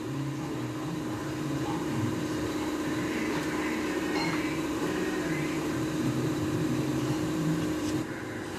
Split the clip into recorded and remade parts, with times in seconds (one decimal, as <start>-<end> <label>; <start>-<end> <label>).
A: 0.0-1.2 recorded; 1.2-6.4 remade; 6.4-6.9 recorded; 6.9-8.2 remade; 8.2-8.6 recorded